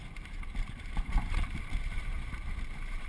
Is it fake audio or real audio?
fake